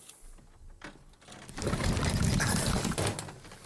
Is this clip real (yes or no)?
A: yes